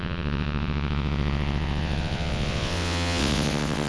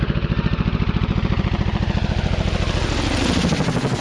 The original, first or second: second